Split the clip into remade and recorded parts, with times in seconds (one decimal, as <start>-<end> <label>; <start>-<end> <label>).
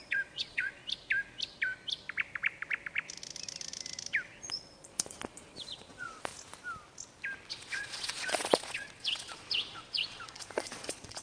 0.0-0.8 remade; 0.8-4.4 recorded; 4.4-6.3 remade; 6.3-7.5 recorded; 7.5-11.2 remade